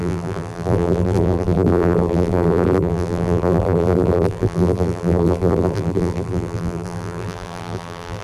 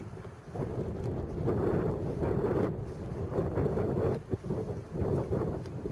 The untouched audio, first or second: second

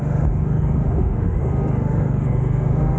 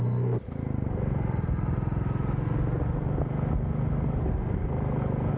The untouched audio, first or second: second